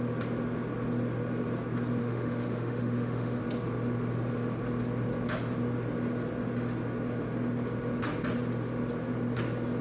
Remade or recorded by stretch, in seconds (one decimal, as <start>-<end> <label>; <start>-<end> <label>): 0.0-2.0 recorded; 2.0-3.4 remade; 3.4-9.8 recorded